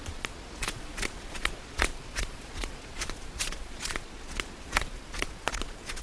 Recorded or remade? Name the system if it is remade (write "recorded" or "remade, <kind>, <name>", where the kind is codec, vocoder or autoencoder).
remade, vocoder, Vocos